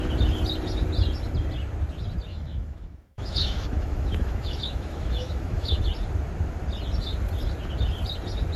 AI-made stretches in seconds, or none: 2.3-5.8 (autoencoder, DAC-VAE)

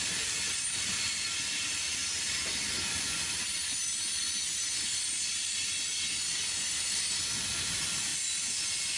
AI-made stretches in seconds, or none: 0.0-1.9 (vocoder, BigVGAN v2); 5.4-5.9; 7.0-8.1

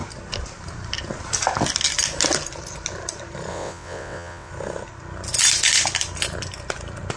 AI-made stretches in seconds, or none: 3.5-4.5 (vocoder, WaveNeXt)

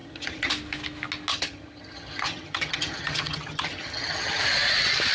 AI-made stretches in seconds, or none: 0.0-0.5 (vocoder, HiFi-GAN); 1.3-4.4